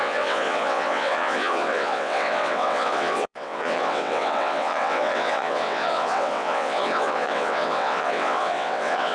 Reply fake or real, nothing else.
fake